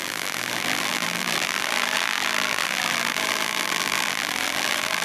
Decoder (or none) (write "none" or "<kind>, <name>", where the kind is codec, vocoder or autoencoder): vocoder, BigVGAN v2